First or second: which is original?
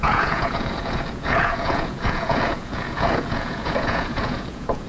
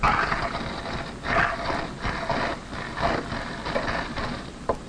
second